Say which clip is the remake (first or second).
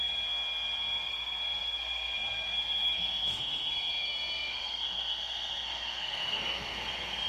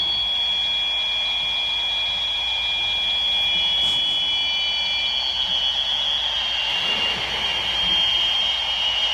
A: first